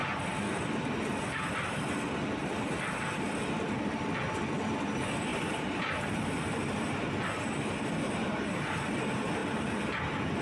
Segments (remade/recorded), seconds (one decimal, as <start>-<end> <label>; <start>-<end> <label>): 0.0-5.3 recorded; 5.3-6.6 remade; 6.6-8.2 recorded; 8.2-8.9 remade; 8.9-10.4 recorded